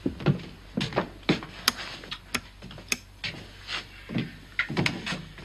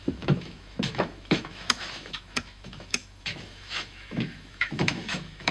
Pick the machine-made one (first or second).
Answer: second